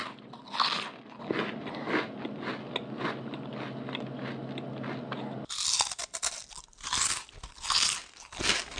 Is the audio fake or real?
real